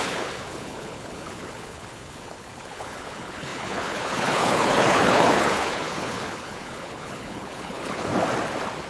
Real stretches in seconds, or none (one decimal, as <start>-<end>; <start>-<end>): 8.1-8.9